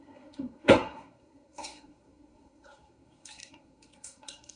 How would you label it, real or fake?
fake